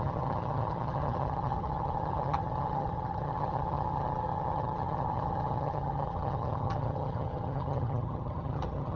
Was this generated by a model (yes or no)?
yes